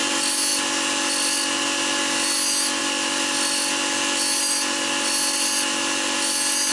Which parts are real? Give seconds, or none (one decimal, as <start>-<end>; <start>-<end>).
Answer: 0.0-6.7

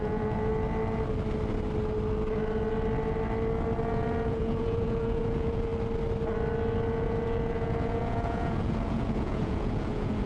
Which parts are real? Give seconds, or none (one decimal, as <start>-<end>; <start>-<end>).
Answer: 0.5-3.9; 5.7-6.9

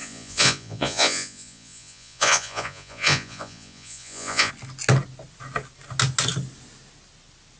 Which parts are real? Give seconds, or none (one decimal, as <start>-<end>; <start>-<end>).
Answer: 4.5-7.6

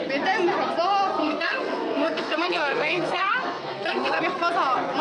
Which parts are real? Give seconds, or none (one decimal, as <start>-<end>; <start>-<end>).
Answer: 0.0-1.2; 4.2-5.0

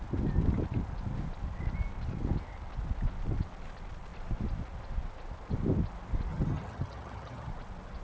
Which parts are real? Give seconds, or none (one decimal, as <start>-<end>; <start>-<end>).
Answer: 0.0-6.3; 7.5-8.0

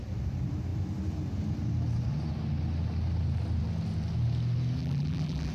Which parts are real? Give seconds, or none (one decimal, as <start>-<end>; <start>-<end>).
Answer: 0.0-4.8

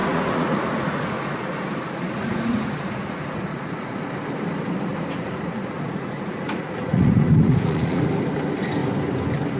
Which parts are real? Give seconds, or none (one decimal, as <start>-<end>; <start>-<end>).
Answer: 4.1-4.9; 8.0-9.6